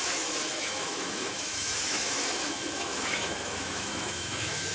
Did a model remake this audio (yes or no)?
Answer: yes